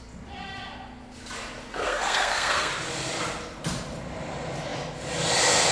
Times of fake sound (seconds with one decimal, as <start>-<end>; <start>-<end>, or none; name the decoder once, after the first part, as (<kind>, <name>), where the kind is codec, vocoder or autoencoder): 1.7-2.7 (codec, SNAC)